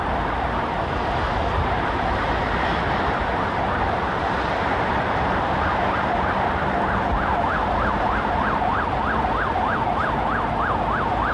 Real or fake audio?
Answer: real